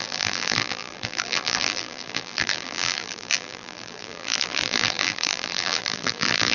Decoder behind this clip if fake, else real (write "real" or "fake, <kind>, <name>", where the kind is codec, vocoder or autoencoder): fake, vocoder, BigVGAN v2